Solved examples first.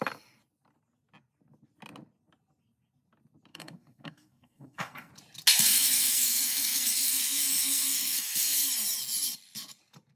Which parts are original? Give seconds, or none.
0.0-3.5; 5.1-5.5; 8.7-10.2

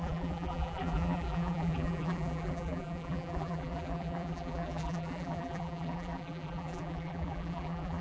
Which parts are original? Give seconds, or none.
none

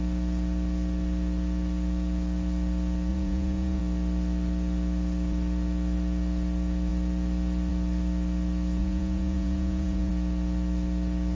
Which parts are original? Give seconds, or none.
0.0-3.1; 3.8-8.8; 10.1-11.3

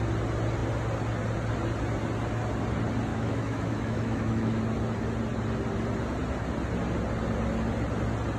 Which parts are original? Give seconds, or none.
0.0-3.1; 4.6-8.4

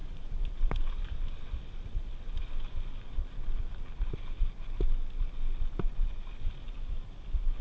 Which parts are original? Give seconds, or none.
1.1-7.6

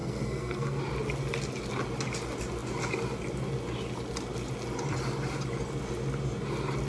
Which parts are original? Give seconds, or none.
0.8-6.9

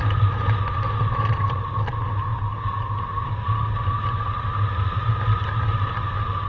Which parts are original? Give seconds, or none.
0.0-6.5